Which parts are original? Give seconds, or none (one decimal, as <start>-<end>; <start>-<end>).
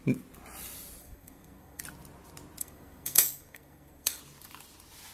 0.0-1.0; 1.8-2.6; 4.2-5.1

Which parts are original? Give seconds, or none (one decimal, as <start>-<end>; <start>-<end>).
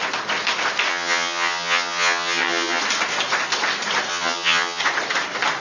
0.0-0.9; 2.8-4.1; 4.8-5.6